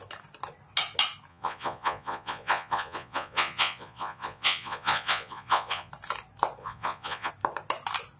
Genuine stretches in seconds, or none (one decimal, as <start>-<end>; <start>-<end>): 0.0-1.3; 5.9-6.6; 7.3-8.2